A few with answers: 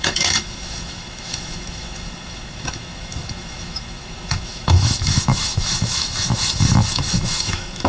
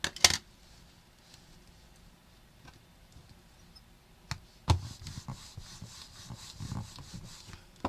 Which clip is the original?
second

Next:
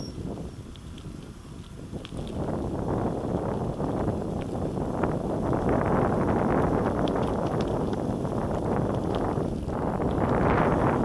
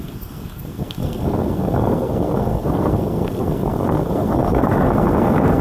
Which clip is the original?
first